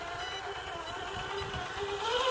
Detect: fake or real real